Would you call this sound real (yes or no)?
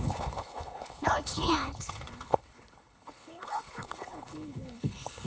no